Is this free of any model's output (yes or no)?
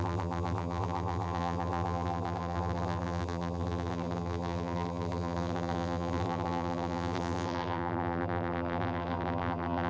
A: no